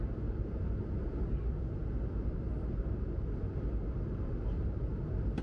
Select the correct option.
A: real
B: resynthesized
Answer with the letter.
A